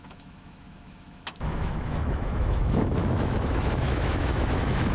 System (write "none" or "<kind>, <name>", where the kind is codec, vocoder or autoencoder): autoencoder, DAC-VAE